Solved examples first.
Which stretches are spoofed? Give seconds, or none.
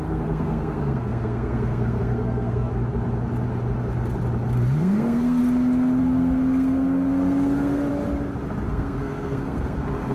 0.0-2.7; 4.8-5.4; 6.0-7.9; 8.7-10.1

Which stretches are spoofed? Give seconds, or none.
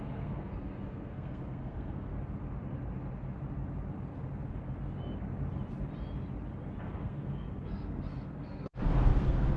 0.0-2.1; 6.8-9.6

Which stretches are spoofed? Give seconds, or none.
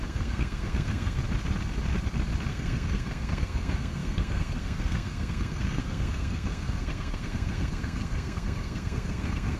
0.0-1.2; 2.5-9.6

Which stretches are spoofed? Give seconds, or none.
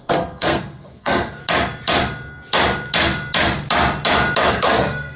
0.0-1.4; 4.5-5.2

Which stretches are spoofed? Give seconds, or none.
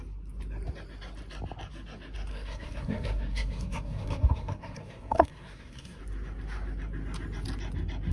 2.3-6.0